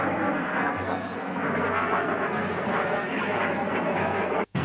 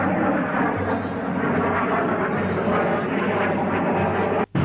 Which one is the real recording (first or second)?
second